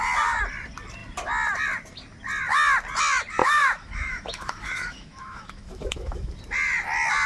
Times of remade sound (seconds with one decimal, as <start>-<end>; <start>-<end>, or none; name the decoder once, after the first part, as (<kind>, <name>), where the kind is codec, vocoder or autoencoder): 3.4-6.3 (autoencoder, DAC-VAE)